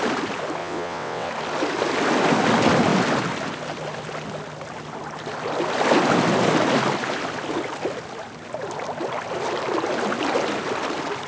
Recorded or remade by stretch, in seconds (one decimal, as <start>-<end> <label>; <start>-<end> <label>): 0.0-0.6 recorded; 0.6-1.3 remade; 1.3-11.3 recorded